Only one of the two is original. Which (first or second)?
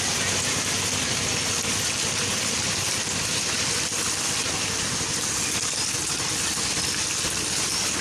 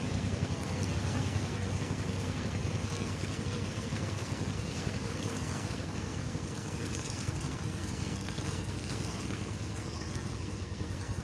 first